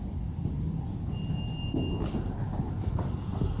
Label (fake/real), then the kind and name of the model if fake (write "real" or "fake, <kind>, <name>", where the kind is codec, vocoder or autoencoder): real